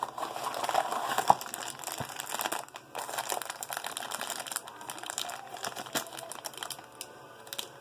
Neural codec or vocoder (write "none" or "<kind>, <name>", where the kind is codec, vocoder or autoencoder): none